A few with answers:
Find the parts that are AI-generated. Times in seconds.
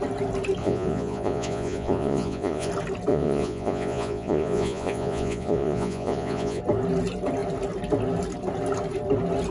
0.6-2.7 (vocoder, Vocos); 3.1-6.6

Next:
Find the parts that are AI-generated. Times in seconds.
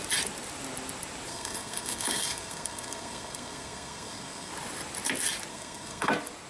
1.3-4.5 (codec, SNAC); 5.5-6.1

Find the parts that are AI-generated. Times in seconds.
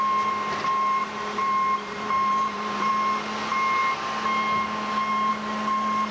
1.0-2.9 (vocoder, BigVGAN v2)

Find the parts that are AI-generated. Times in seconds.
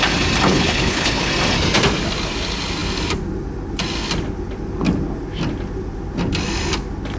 0.5-1.3 (codec, HILCodec)